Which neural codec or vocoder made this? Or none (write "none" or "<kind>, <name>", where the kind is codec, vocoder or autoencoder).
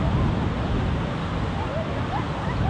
none